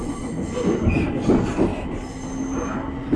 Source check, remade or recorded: recorded